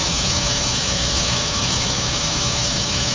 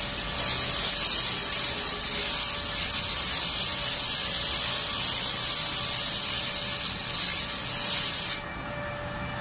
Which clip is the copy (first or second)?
first